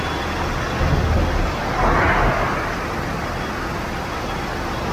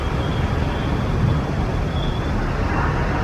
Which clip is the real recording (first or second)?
first